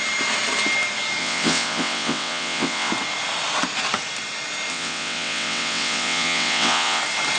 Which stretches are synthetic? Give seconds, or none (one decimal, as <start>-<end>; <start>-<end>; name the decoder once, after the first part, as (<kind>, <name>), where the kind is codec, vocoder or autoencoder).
1.2-2.9 (vocoder, WaveNeXt); 4.7-7.0